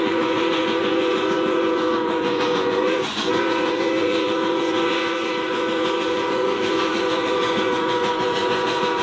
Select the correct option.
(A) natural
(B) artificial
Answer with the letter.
B